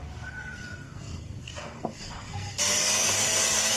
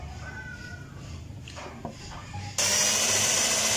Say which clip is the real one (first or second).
second